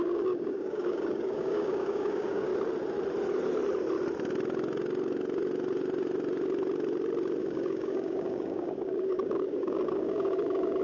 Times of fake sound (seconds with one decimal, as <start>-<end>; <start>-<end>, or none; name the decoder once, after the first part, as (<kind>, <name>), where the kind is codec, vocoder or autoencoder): 0.0-2.5 (codec, DAC); 7.4-10.8